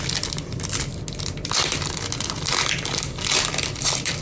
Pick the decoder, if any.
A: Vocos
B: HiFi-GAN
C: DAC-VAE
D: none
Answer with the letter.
D